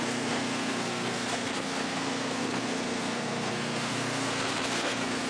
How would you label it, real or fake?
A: fake